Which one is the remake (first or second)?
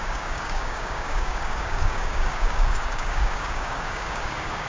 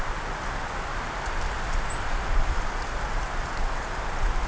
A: first